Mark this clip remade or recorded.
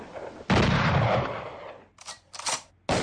recorded